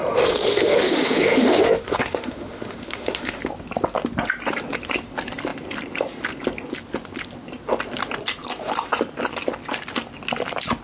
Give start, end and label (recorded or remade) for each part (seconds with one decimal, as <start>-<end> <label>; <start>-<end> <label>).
0.0-0.4 recorded; 0.4-3.4 remade; 3.4-10.8 recorded